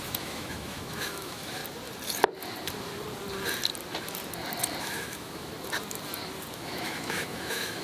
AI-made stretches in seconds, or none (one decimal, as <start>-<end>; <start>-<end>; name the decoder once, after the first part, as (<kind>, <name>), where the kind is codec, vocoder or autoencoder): 0.0-1.6 (autoencoder, DAC-VAE); 4.8-5.5; 6.5-7.8